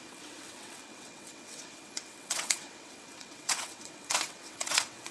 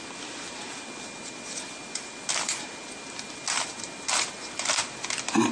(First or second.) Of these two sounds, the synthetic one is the first